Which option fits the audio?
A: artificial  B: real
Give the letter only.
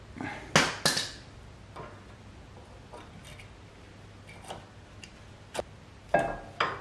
B